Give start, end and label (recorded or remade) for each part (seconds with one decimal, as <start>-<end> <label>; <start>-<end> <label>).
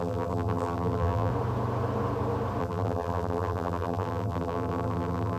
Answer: 0.0-1.3 remade; 1.3-2.6 recorded; 2.6-5.4 remade